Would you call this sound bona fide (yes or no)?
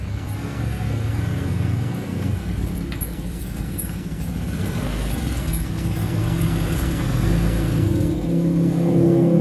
no